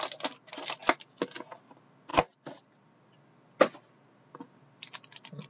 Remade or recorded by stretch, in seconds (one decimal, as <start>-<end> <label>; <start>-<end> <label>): 0.0-5.5 recorded

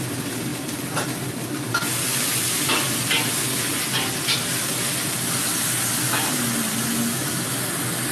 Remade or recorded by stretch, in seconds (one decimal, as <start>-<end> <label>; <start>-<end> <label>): 0.0-8.1 recorded

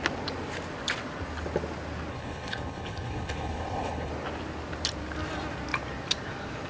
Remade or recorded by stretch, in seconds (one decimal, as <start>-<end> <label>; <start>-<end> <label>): 0.0-2.1 recorded; 2.1-4.1 remade; 4.1-6.7 recorded

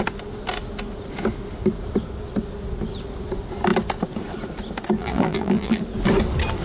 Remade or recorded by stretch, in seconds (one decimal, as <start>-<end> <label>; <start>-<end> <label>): 0.0-5.0 recorded; 5.0-5.8 remade; 5.8-6.6 recorded

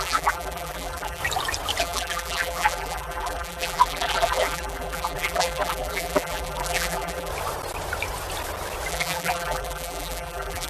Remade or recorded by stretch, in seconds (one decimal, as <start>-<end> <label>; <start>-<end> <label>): 0.0-1.2 remade; 1.2-1.8 recorded; 1.8-7.3 remade; 7.3-8.9 recorded; 8.9-10.7 remade